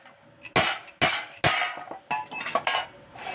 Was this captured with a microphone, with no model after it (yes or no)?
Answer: yes